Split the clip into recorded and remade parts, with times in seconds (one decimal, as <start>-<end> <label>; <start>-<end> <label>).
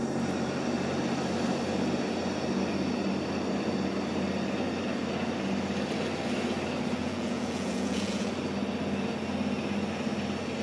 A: 0.0-7.0 recorded; 7.0-8.3 remade; 8.3-10.6 recorded